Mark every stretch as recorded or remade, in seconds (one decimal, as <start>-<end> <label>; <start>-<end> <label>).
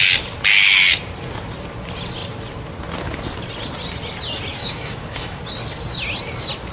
0.0-4.6 recorded; 4.6-5.4 remade; 5.4-6.7 recorded